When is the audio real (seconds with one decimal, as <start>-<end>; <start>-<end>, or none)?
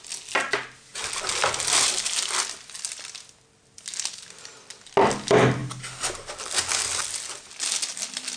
0.0-8.4